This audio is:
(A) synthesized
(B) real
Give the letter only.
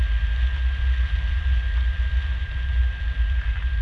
B